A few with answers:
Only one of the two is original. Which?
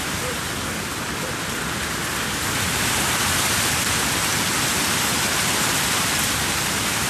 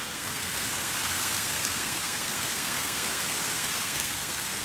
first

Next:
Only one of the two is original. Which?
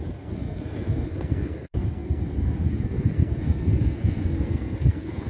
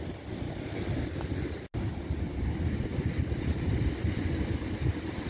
second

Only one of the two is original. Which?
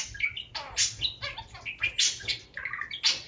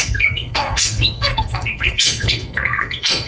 first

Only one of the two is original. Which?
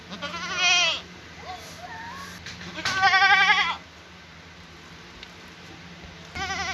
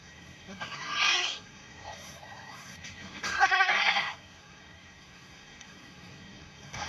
first